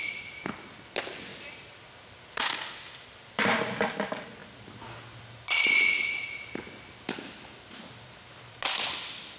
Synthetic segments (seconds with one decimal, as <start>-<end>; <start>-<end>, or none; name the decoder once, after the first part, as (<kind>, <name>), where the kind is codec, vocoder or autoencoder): 1.3-1.9 (vocoder, BigVGAN v2)

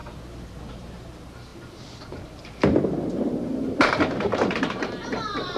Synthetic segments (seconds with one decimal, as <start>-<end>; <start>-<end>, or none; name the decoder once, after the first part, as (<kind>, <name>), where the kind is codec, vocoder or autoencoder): 0.7-5.6 (vocoder, BigVGAN v2)

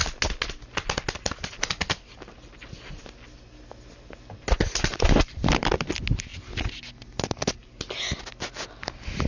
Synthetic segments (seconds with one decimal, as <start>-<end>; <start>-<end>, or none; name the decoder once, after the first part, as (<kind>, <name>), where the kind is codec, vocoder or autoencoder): 4.9-5.8 (vocoder, BigVGAN v2)